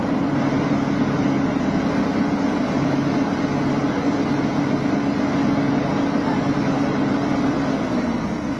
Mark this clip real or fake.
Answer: real